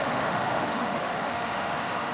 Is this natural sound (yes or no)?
no